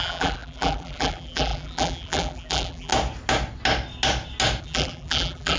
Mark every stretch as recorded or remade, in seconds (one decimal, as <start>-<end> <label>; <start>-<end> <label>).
0.0-2.9 remade; 2.9-4.6 recorded; 4.6-5.6 remade